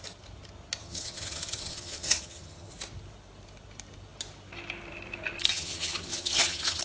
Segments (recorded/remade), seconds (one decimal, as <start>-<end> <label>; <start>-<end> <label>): 0.0-0.8 recorded; 0.8-2.7 remade; 2.7-5.5 recorded; 5.5-6.8 remade